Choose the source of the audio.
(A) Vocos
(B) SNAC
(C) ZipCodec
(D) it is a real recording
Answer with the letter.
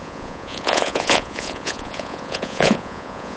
A